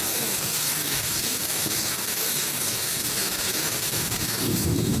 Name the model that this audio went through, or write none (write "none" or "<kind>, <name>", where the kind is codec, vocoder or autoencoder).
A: codec, DAC